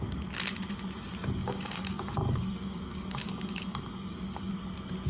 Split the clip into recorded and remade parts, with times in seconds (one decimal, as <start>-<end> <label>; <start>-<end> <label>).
0.0-1.4 recorded; 1.4-4.5 remade; 4.5-5.1 recorded